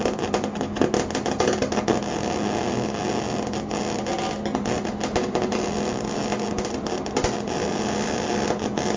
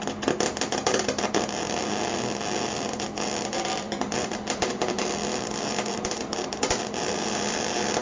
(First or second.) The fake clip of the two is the second